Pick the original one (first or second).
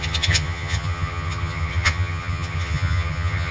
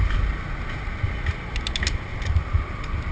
second